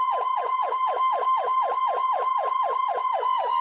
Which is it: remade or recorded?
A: recorded